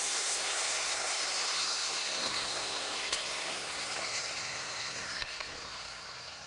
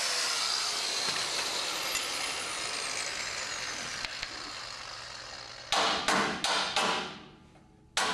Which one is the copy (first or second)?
first